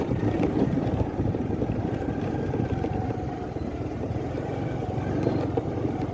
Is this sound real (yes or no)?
no